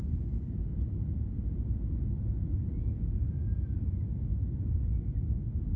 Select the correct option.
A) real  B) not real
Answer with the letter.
A